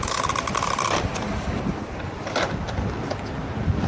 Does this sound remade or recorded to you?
recorded